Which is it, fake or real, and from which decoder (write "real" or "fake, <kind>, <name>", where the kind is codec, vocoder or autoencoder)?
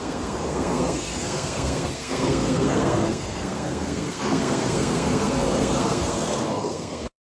fake, codec, SNAC